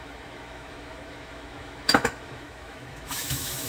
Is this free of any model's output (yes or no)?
no